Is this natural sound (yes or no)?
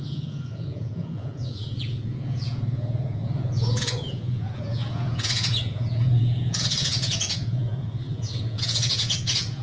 no